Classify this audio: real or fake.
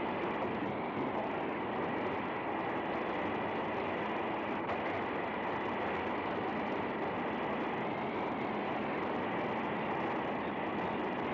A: real